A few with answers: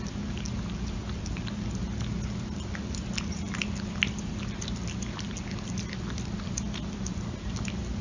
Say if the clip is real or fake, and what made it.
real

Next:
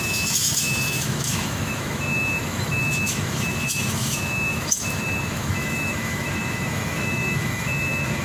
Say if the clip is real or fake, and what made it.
fake, autoencoder, DAC-VAE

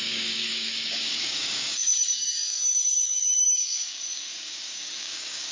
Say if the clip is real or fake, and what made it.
fake, codec, DAC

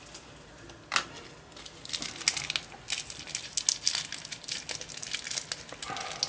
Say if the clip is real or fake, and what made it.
real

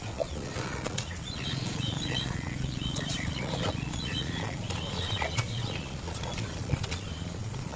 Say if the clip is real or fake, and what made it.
fake, vocoder, Vocos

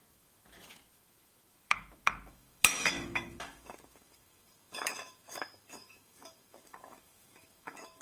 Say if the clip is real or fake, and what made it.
fake, autoencoder, DAC-VAE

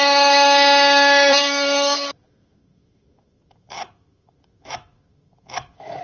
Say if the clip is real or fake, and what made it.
fake, autoencoder, DAC-VAE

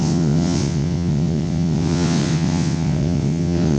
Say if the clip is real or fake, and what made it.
fake, vocoder, WaveNeXt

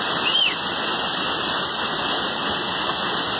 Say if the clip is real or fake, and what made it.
real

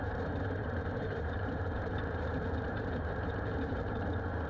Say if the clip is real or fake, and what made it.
fake, vocoder, BigVGAN v2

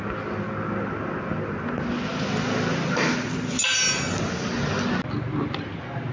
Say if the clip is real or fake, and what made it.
real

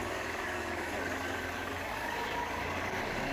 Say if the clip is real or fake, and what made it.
fake, codec, DAC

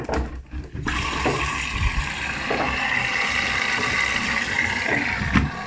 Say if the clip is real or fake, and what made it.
real